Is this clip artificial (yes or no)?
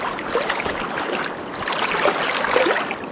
no